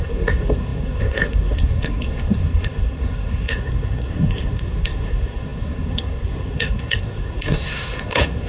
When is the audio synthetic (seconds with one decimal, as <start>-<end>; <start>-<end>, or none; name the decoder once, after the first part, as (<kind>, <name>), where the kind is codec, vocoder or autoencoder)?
0.0-8.5 (codec, SNAC)